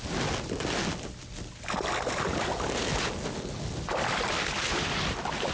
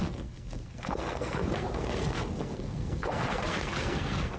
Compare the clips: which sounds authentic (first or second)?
first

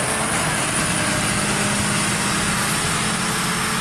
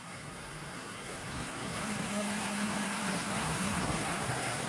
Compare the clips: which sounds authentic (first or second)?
first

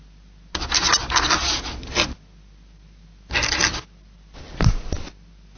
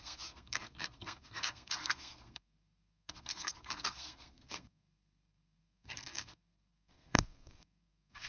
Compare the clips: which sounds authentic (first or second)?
first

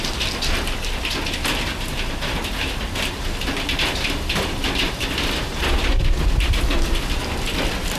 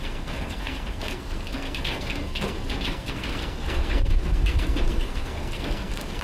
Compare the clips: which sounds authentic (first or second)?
first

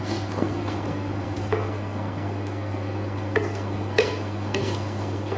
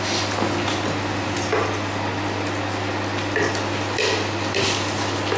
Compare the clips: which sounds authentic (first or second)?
second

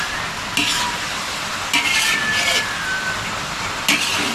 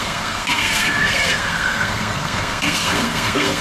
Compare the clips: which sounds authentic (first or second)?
first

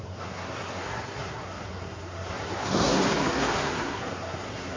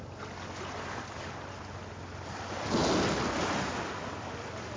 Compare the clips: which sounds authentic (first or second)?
second